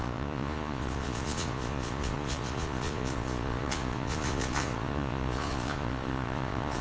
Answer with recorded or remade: remade